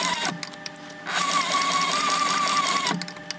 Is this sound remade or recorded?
recorded